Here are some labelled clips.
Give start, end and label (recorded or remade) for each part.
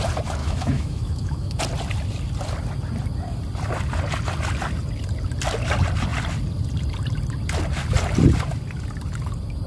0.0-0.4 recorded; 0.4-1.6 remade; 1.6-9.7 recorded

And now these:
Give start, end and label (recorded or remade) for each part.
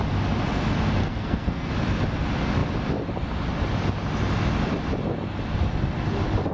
0.0-1.0 recorded; 1.0-1.7 remade; 1.7-6.5 recorded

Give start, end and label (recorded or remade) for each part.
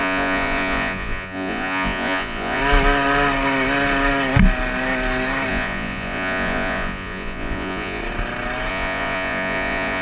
0.0-2.6 remade; 2.6-5.5 recorded; 5.5-8.0 remade; 8.0-8.7 recorded; 8.7-10.0 remade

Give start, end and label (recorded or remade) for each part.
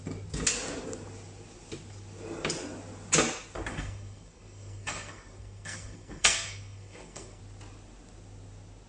0.0-3.7 recorded; 3.7-7.4 remade; 7.4-8.9 recorded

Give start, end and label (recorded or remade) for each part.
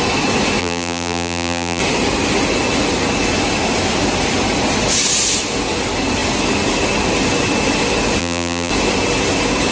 0.0-0.6 recorded; 0.6-1.8 remade; 1.8-8.2 recorded; 8.2-8.7 remade; 8.7-9.7 recorded